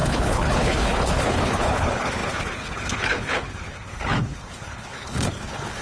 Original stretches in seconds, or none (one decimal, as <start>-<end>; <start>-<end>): none